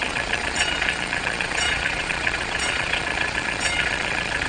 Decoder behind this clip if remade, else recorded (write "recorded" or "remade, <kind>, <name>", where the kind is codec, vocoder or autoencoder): remade, vocoder, Vocos